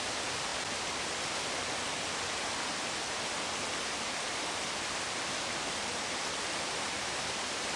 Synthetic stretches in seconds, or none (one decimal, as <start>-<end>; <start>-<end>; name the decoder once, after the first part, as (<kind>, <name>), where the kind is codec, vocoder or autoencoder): 0.5-2.3 (vocoder, BigVGAN v2); 4.6-7.8